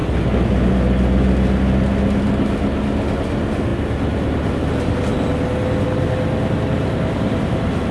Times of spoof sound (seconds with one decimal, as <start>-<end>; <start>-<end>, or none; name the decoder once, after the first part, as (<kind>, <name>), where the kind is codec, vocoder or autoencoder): none